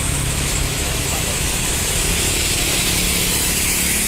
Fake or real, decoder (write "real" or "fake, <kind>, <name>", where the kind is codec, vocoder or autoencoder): fake, autoencoder, DAC-VAE